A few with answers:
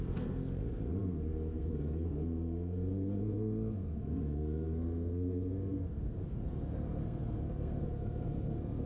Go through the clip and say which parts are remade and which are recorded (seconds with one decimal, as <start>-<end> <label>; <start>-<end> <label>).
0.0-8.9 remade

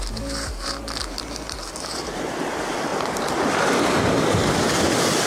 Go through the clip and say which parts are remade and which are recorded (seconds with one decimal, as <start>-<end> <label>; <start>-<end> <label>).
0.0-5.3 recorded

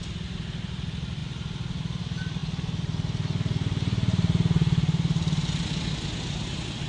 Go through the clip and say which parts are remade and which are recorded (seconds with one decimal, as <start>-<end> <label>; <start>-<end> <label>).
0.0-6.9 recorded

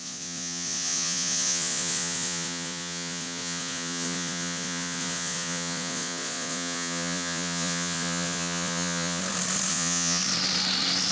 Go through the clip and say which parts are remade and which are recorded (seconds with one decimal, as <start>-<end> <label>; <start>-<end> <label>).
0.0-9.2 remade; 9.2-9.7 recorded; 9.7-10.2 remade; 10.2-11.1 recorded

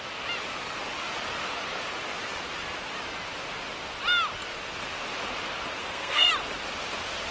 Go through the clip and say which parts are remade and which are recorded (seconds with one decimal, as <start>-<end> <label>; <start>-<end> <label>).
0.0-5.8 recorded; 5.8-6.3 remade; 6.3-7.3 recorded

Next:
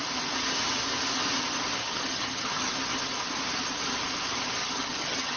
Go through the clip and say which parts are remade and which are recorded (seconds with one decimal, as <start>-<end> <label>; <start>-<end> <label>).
0.0-1.8 recorded; 1.8-2.7 remade; 2.7-4.6 recorded; 4.6-5.4 remade

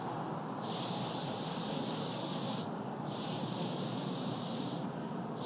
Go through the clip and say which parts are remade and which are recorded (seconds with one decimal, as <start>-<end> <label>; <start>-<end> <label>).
0.0-1.2 recorded; 1.2-1.8 remade; 1.8-2.3 recorded; 2.3-4.9 remade; 4.9-5.5 recorded

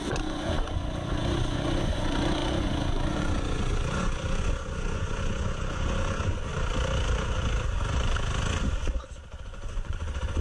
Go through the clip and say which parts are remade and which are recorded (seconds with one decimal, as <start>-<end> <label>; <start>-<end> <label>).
0.0-6.5 remade; 6.5-9.4 recorded; 9.4-10.4 remade